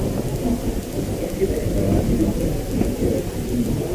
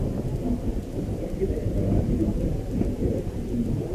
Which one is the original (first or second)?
first